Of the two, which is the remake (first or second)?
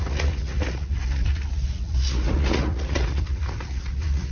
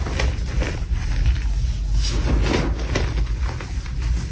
first